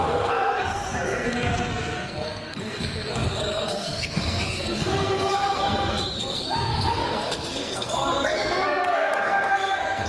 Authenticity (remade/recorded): remade